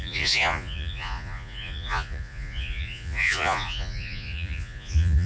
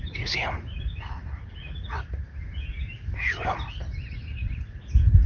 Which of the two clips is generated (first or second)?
first